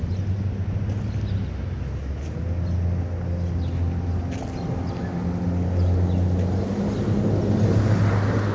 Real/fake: real